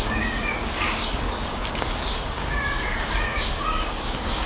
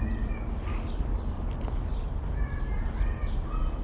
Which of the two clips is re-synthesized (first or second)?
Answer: first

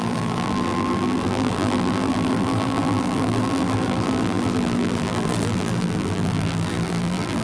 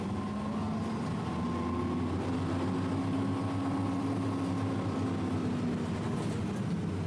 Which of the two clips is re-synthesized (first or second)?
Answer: first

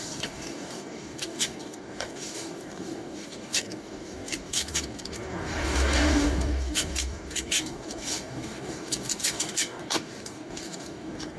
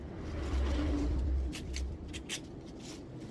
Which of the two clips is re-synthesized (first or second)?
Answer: first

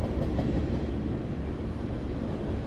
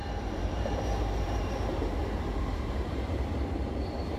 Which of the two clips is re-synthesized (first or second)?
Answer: second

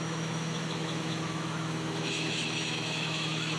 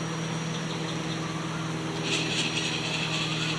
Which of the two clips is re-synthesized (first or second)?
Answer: first